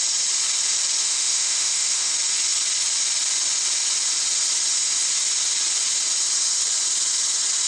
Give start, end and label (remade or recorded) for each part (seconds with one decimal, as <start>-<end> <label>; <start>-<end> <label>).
0.0-1.0 recorded; 1.0-2.1 remade; 2.1-7.7 recorded